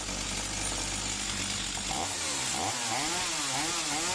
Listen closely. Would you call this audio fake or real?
real